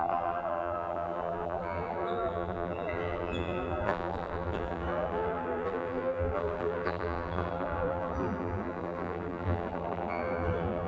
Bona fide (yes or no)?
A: no